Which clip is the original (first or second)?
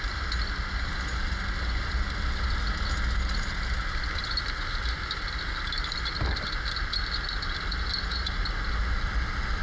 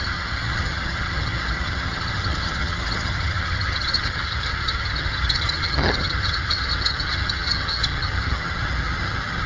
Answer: first